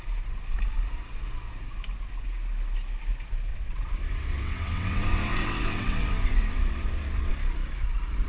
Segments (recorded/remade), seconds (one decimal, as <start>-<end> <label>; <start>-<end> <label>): 0.0-3.5 recorded; 3.5-7.3 remade; 7.3-8.3 recorded